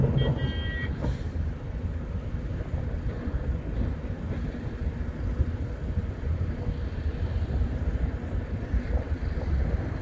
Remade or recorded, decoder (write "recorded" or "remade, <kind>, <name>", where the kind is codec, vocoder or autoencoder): recorded